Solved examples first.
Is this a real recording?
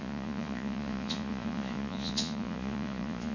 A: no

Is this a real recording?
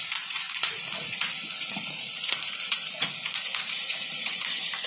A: no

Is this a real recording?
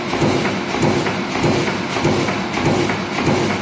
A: yes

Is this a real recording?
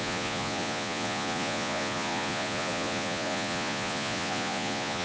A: no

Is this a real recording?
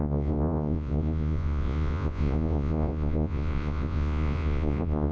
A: no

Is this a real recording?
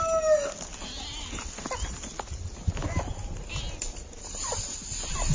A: yes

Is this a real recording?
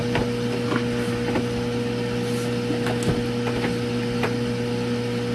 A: yes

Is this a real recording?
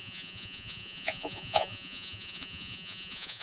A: no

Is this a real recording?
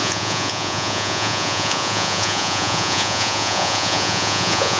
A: no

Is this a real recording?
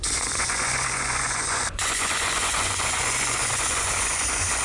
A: no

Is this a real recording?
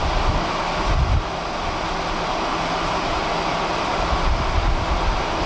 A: yes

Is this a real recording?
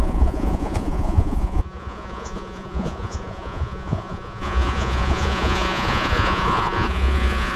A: no